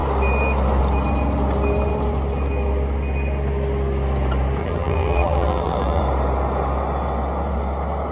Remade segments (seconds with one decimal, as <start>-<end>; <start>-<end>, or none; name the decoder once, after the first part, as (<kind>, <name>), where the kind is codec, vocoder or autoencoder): 4.6-6.0 (vocoder, BigVGAN v2)

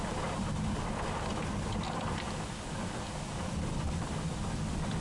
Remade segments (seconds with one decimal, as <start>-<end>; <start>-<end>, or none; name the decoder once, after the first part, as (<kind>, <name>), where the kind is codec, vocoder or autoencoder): 0.0-1.3 (vocoder, BigVGAN v2); 4.3-5.0

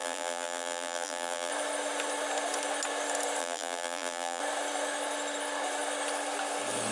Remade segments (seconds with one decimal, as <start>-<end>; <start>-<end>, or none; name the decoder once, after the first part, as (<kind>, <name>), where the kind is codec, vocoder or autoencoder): 0.0-1.5 (vocoder, BigVGAN v2); 3.4-4.4

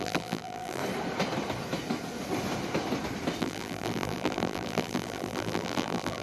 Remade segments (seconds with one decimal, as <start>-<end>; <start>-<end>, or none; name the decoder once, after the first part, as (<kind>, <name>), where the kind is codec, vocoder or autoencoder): 0.0-0.8 (vocoder, BigVGAN v2); 3.4-6.2

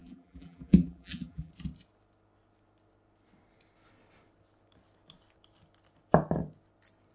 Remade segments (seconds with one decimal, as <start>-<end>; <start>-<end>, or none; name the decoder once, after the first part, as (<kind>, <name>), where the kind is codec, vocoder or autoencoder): 0.0-1.5 (vocoder, BigVGAN v2)